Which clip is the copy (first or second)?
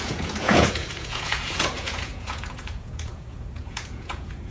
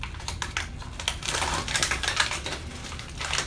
first